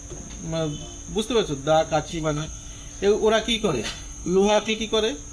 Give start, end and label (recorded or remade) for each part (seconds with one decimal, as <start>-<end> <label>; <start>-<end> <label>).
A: 0.0-2.1 recorded; 2.1-2.9 remade; 2.9-3.5 recorded; 3.5-4.8 remade; 4.8-5.3 recorded